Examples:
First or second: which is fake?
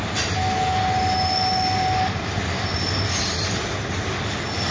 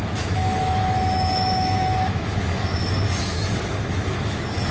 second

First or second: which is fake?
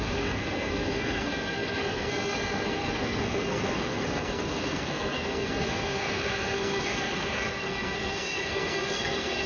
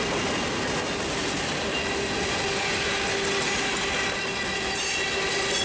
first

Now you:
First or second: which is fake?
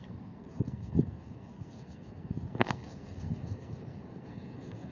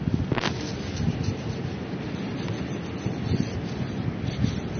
first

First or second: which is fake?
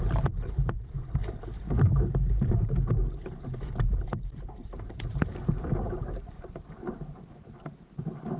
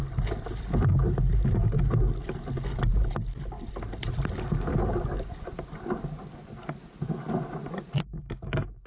first